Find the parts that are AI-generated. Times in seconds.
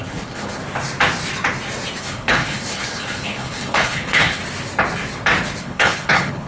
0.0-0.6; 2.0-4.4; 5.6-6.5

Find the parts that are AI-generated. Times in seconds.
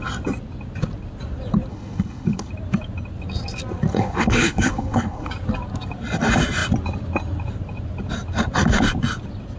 1.7-2.5; 3.9-5.3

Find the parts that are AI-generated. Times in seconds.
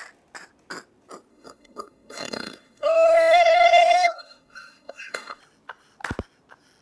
1.3-5.4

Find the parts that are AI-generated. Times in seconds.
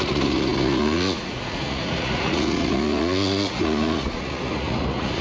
0.0-5.2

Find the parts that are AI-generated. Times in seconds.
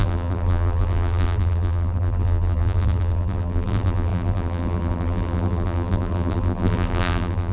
0.0-7.5